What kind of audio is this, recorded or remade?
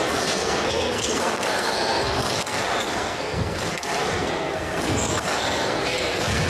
remade